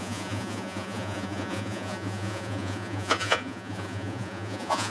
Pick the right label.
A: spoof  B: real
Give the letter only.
A